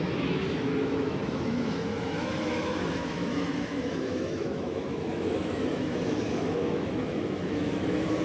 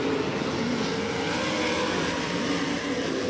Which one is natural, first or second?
second